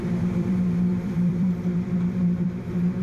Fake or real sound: fake